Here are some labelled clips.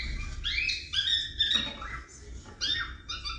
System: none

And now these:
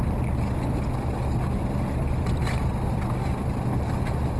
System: none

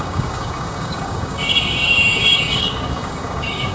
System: codec, DAC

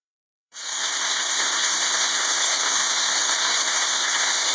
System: codec, SNAC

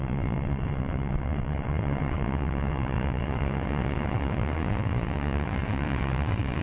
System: vocoder, WaveNeXt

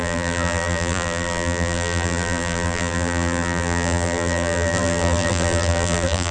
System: vocoder, BigVGAN v2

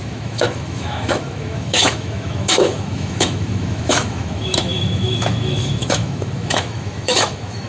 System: autoencoder, DAC-VAE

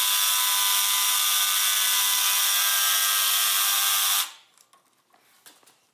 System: none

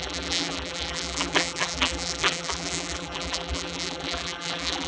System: vocoder, BigVGAN v2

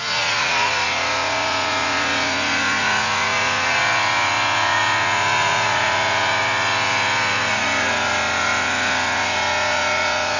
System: vocoder, Vocos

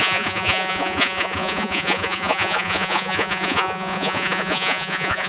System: vocoder, Vocos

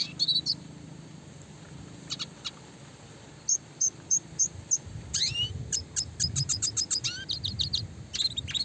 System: none